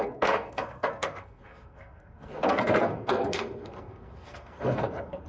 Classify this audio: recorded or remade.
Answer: remade